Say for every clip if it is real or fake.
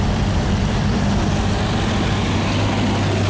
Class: real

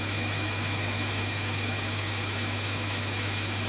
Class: fake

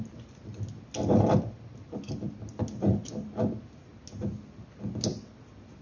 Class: real